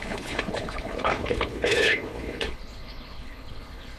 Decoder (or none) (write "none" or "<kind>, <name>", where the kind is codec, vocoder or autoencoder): codec, HILCodec